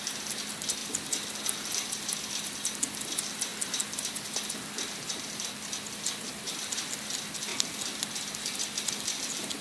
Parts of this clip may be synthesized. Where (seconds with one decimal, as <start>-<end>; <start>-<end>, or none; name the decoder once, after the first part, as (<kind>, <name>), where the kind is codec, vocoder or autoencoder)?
0.0-3.5 (vocoder, BigVGAN v2); 6.5-7.5; 8.2-9.6